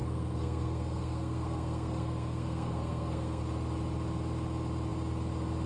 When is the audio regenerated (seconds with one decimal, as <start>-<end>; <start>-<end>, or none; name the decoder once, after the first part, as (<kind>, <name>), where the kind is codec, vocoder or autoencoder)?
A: 0.0-3.4 (codec, SNAC)